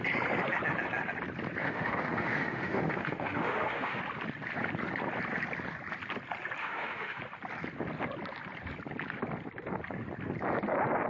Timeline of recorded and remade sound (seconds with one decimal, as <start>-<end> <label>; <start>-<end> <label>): 0.0-1.6 recorded; 1.6-4.0 remade; 4.0-6.6 recorded; 6.6-7.2 remade; 7.2-11.1 recorded